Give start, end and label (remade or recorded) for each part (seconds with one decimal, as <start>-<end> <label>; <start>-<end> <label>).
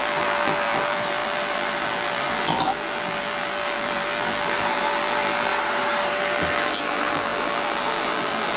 0.0-5.5 remade; 5.5-6.2 recorded; 6.2-8.6 remade